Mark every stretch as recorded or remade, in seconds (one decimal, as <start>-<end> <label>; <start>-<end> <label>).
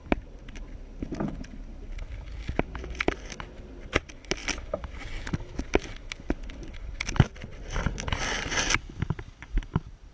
0.0-10.1 recorded